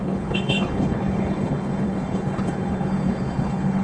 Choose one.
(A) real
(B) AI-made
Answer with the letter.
B